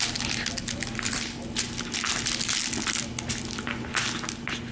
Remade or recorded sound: recorded